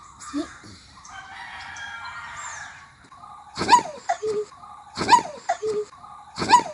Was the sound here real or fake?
fake